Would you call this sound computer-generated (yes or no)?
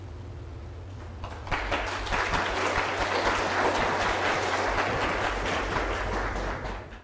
no